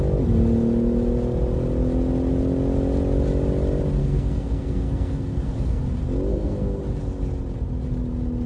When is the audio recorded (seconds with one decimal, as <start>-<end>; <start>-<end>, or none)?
0.0-4.0; 5.8-6.3; 6.8-8.5